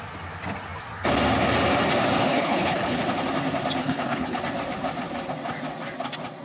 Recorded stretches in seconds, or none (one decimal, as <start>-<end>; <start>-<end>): 0.0-2.3; 3.0-3.8; 4.4-6.4